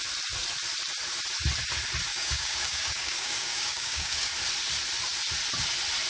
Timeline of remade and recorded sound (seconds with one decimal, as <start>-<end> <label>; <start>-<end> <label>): 0.0-2.1 recorded; 2.1-4.3 remade; 4.3-6.1 recorded